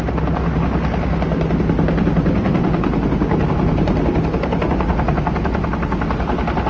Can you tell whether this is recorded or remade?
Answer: recorded